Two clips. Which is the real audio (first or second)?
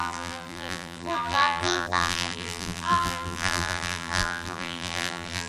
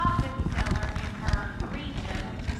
second